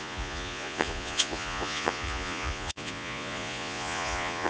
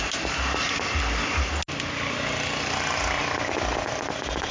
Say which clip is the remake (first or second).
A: first